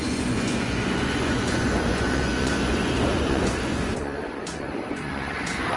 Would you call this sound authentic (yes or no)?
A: no